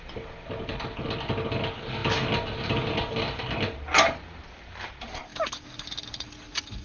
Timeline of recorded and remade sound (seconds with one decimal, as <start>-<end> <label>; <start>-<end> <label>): 0.0-6.8 recorded